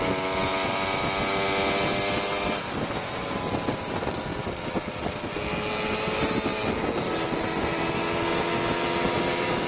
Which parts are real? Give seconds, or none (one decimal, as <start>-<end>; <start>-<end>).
0.0-9.7